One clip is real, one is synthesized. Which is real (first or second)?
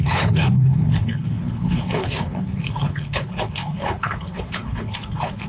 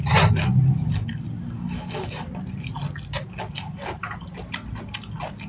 second